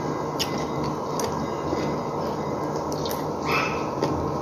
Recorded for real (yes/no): yes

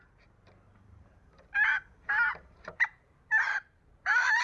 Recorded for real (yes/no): no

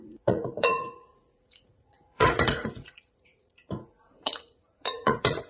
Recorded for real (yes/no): no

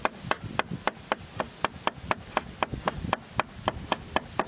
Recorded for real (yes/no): yes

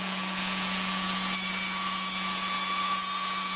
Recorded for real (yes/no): no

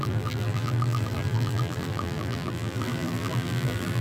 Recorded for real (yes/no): no